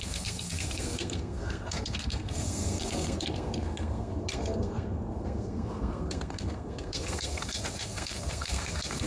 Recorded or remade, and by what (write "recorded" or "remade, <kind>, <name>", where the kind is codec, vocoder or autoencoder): remade, codec, SNAC